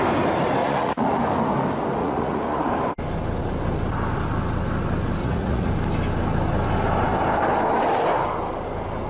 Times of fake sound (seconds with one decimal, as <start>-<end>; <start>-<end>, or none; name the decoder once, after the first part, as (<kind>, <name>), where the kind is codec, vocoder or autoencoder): 0.6-1.2 (vocoder, Vocos); 2.0-2.6; 5.2-5.7